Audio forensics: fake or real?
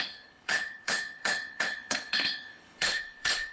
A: fake